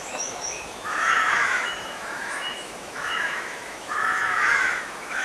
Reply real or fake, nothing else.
fake